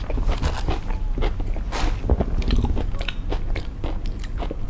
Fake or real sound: real